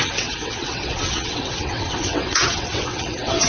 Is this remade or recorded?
remade